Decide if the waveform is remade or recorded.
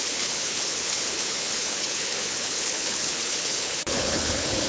remade